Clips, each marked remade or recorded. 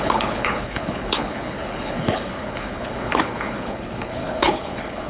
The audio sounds remade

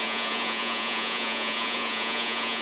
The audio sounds remade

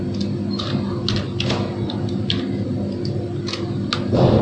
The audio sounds recorded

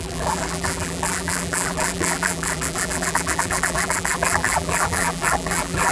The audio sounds remade